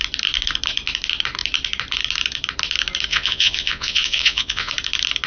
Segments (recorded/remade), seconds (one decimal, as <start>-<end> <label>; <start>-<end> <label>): 0.0-3.1 recorded; 3.1-4.7 remade; 4.7-5.3 recorded

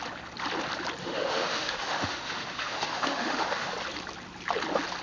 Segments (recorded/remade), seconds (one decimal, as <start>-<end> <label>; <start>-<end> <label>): 0.0-1.0 recorded; 1.0-3.7 remade; 3.7-5.0 recorded

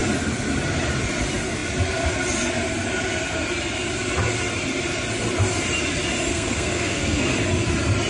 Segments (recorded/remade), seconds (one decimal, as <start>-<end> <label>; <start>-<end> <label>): 0.0-6.3 recorded; 6.3-7.2 remade; 7.2-8.1 recorded

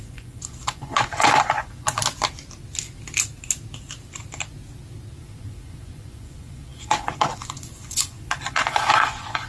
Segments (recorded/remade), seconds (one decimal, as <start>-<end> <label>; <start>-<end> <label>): 0.0-2.0 remade; 2.0-5.2 recorded; 5.2-9.5 remade